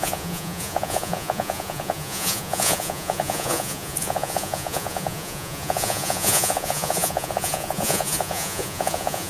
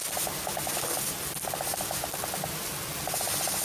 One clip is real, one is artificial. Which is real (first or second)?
second